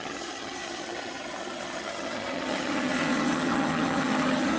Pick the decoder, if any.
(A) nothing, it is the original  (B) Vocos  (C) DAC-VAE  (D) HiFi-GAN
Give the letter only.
D